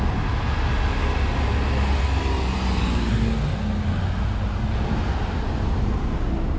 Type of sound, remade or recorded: recorded